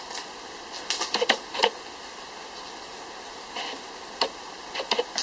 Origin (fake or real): real